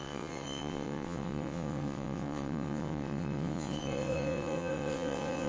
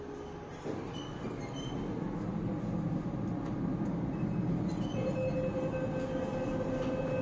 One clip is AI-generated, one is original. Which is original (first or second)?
second